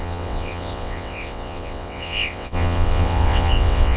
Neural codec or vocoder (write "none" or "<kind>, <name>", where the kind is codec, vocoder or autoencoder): vocoder, WaveNeXt